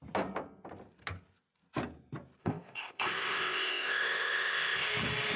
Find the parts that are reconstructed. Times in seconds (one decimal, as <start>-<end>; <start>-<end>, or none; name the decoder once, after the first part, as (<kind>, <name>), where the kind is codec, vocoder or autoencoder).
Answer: 2.4-4.9 (codec, ZipCodec)